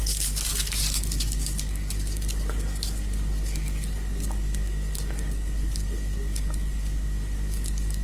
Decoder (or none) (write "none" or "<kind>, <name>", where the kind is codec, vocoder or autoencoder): codec, DAC